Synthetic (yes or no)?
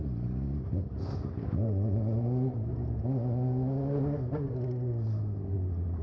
no